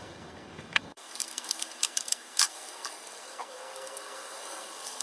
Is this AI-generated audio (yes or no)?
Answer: yes